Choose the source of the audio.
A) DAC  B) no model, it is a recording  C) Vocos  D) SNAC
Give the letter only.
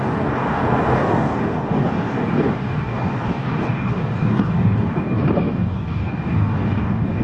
A